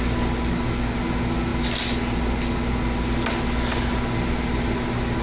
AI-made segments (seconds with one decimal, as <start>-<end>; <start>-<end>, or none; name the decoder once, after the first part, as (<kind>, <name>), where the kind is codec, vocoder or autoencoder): none